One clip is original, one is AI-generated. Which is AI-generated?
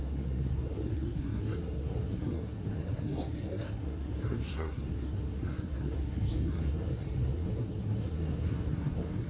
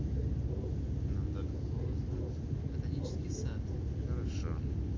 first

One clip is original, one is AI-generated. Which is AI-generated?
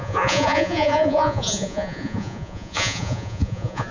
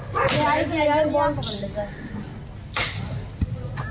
first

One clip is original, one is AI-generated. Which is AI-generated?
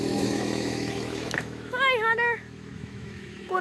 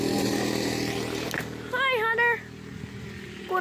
first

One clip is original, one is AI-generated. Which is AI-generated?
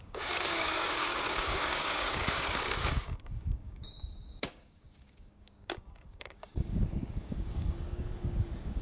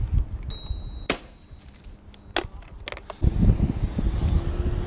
first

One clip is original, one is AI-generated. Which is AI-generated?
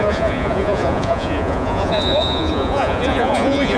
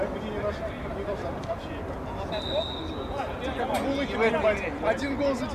first